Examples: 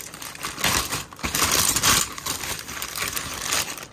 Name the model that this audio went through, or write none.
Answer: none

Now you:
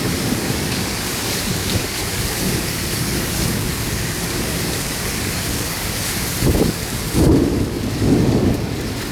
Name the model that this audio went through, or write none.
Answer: codec, DAC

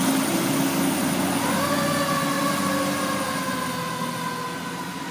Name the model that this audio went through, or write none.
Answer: none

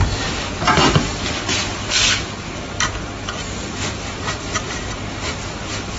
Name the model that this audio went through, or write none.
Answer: none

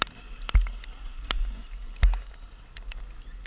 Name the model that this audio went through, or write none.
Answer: none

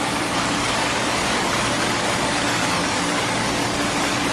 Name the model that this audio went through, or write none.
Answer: codec, DAC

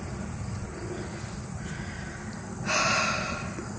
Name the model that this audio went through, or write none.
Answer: none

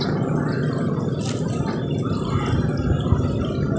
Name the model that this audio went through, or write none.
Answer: none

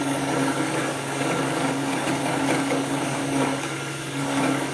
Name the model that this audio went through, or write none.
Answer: codec, DAC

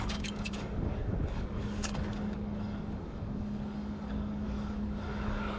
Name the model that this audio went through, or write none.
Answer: codec, DAC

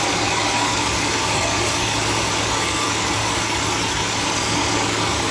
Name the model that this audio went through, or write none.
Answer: codec, DAC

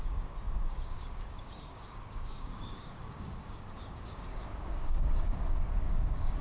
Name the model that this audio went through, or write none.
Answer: codec, DAC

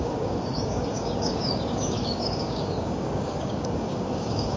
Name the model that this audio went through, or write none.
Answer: codec, DAC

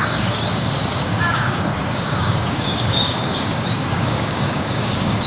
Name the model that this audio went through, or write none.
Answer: codec, DAC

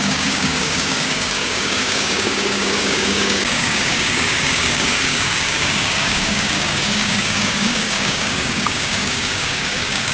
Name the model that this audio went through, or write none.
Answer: codec, DAC